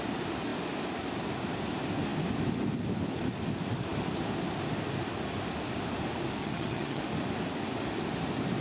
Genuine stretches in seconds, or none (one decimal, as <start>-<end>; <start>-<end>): 0.0-6.4; 7.0-8.6